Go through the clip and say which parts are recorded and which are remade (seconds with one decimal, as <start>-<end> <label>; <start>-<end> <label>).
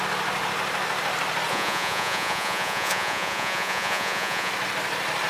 0.0-1.5 recorded; 1.5-4.5 remade; 4.5-5.3 recorded